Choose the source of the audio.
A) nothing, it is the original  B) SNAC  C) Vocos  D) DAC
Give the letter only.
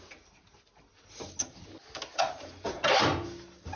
A